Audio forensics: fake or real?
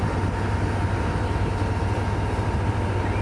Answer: real